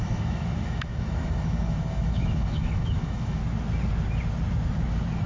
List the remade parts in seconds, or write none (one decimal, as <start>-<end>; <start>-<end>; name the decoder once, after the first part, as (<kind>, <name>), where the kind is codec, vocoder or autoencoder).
0.0-3.4 (autoencoder, DAC-VAE)